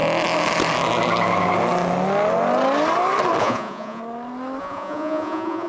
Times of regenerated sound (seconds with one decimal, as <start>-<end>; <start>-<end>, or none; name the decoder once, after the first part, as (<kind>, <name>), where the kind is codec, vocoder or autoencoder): 3.4-4.0 (vocoder, Vocos); 4.6-5.7